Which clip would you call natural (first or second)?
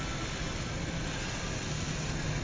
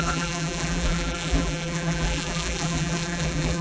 first